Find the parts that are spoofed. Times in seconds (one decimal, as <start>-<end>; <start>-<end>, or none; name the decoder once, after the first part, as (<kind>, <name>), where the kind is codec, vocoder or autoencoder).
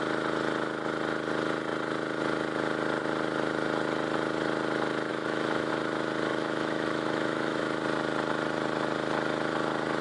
5.1-5.7 (autoencoder, DAC-VAE); 6.3-7.6